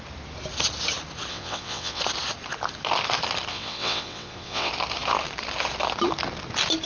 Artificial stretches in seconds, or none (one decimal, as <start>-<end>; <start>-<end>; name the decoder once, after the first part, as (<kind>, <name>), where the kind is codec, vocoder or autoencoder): 1.3-2.0 (vocoder, WaveNeXt); 3.5-4.7